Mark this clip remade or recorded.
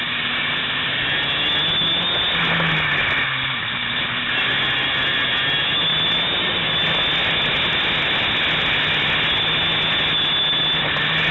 recorded